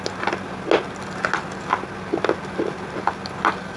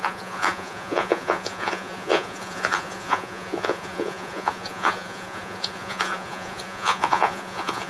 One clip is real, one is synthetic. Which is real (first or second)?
first